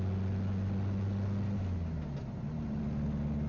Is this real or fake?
real